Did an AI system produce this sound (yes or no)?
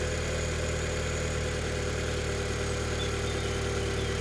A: no